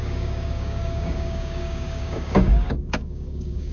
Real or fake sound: fake